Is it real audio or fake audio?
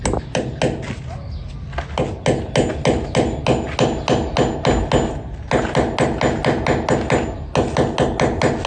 real